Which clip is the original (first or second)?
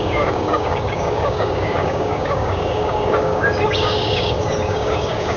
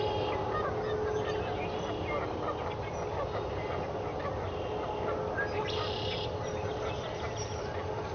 second